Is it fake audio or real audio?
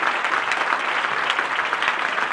real